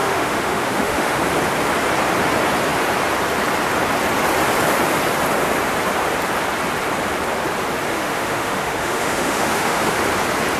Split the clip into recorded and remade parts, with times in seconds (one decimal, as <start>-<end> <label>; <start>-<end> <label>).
0.0-1.2 remade; 1.2-7.9 recorded; 7.9-10.0 remade; 10.0-10.6 recorded